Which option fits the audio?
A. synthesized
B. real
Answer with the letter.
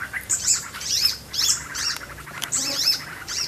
A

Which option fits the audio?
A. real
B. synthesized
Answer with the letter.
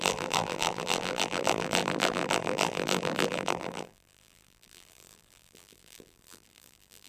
B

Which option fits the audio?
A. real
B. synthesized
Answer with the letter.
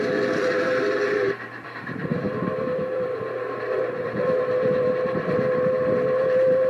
B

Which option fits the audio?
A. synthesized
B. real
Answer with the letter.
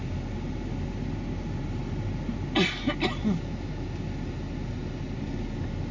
B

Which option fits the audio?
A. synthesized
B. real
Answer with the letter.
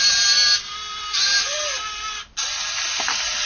B